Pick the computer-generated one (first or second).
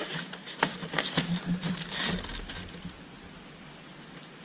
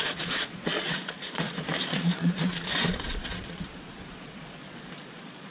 second